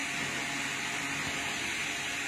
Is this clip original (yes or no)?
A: yes